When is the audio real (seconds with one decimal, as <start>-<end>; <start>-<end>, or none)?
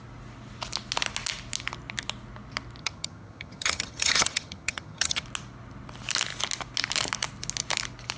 0.0-2.8; 5.2-8.2